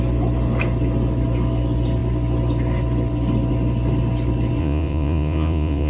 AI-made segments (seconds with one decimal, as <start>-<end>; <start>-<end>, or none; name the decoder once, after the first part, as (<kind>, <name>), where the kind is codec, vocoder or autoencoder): 4.6-5.9 (vocoder, Vocos)